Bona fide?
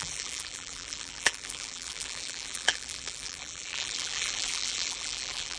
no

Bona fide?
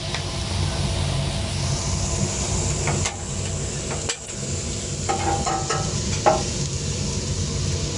yes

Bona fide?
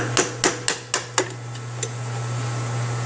yes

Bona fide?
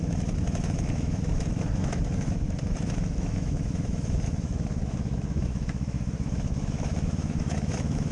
no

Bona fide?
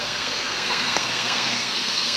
no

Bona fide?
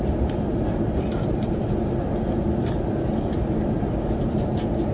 yes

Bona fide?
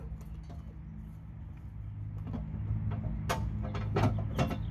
yes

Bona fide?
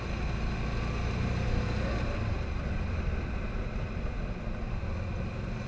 yes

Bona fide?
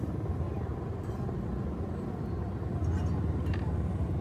yes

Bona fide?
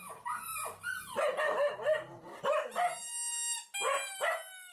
yes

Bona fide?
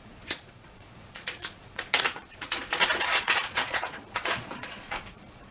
no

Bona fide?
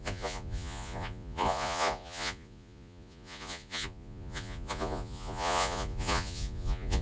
no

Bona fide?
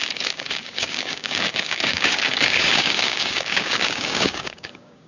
no